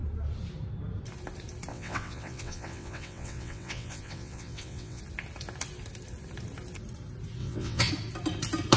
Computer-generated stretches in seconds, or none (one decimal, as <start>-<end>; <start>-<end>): 1.7-5.0; 7.4-7.9